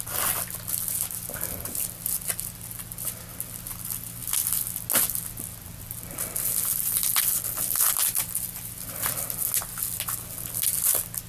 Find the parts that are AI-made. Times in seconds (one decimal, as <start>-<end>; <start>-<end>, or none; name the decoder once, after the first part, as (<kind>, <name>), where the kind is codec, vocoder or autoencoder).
none